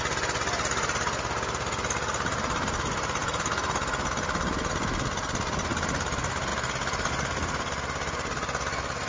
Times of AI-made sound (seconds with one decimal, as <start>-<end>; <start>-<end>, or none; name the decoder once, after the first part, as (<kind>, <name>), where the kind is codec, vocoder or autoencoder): none